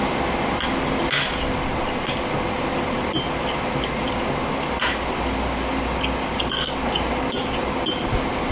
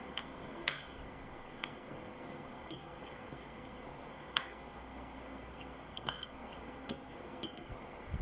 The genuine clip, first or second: first